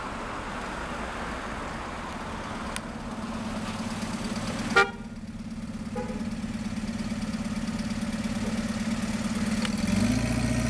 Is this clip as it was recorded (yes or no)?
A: yes